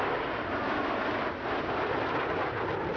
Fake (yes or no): no